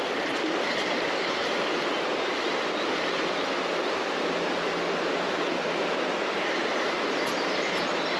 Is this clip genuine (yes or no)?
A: yes